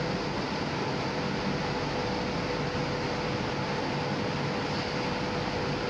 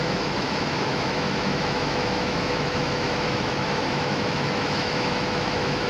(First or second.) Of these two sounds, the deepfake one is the second